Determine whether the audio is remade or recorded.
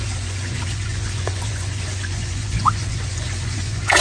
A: remade